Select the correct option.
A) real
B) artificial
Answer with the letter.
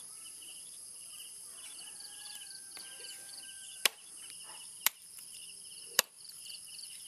B